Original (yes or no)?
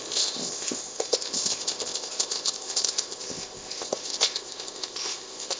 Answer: no